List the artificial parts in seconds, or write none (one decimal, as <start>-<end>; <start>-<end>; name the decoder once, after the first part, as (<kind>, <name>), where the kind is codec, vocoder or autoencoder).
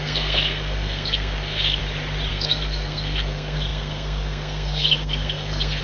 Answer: 0.0-1.8 (codec, SNAC); 2.3-5.8